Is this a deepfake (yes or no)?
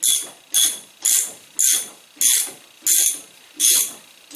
no